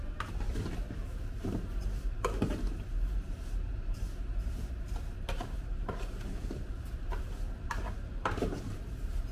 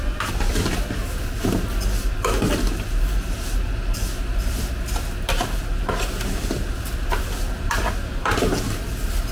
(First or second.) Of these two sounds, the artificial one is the first